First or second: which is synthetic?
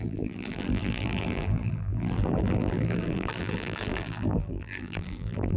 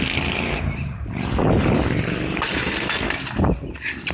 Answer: first